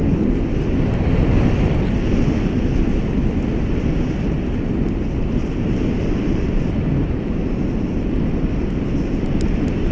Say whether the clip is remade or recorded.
recorded